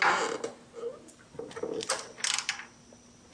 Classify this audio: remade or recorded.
recorded